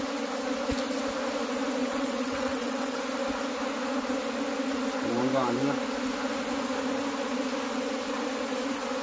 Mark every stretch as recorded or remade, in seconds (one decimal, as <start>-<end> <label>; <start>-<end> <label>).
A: 0.0-1.8 recorded; 1.8-3.0 remade; 3.0-9.0 recorded